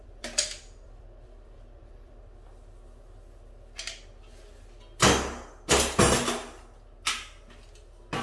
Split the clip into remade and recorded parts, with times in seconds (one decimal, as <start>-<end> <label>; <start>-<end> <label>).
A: 0.0-2.2 remade; 2.2-8.2 recorded

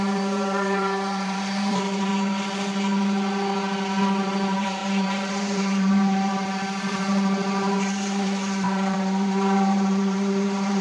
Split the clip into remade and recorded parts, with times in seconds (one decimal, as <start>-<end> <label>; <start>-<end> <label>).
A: 0.0-2.1 remade; 2.1-4.0 recorded; 4.0-10.8 remade

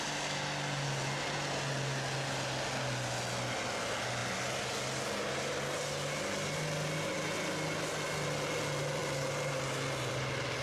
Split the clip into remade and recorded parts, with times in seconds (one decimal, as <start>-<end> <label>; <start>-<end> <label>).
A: 0.0-10.6 recorded

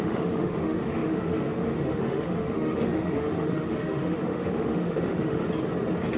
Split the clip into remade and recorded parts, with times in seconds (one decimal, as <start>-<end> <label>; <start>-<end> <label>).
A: 0.0-5.4 remade; 5.4-6.2 recorded

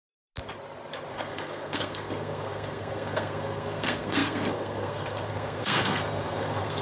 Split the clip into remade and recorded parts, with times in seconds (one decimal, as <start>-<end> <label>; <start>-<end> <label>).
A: 0.0-1.1 recorded; 1.1-6.8 remade

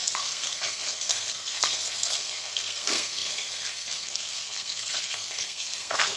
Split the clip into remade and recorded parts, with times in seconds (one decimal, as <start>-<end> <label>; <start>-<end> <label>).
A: 0.0-6.2 remade